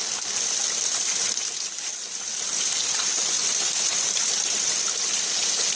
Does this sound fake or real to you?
real